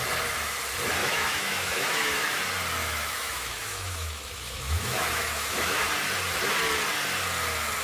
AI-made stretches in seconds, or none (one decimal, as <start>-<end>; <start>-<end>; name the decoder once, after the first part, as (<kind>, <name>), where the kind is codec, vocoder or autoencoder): 1.0-2.4 (autoencoder, DAC-VAE); 2.8-5.8